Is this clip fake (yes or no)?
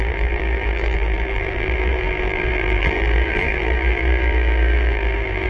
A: yes